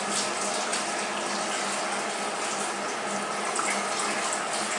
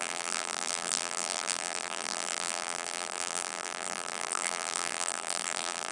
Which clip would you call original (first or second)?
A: first